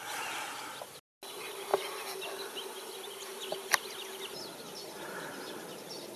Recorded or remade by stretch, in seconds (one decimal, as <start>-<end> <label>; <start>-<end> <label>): 0.0-3.5 recorded; 3.5-5.6 remade; 5.6-6.2 recorded